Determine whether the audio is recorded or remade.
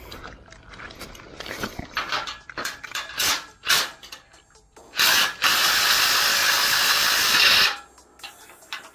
recorded